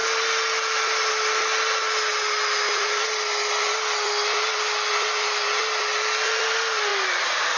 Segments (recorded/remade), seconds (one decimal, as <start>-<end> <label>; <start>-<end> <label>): 0.0-7.6 recorded